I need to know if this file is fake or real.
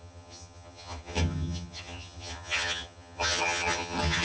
fake